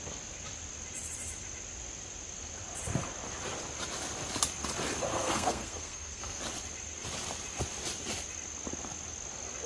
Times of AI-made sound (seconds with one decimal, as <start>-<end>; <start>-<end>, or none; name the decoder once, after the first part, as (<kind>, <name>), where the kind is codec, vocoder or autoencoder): 5.1-6.4 (codec, SNAC)